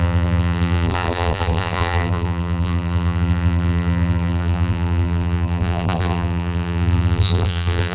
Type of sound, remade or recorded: remade